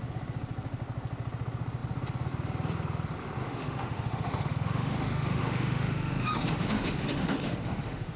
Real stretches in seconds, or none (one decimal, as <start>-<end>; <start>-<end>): 0.0-3.4